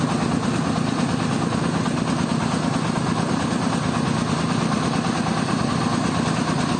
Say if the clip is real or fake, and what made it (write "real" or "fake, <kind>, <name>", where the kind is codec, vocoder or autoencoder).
real